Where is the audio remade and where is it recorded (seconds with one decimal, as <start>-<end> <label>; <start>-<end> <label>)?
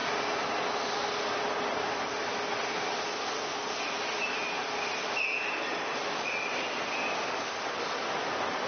0.0-8.7 recorded